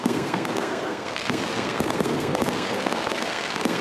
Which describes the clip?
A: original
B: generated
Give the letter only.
B